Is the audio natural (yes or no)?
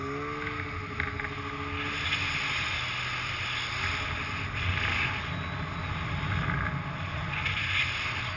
yes